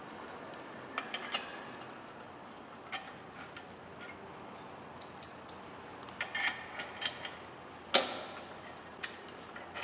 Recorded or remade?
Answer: recorded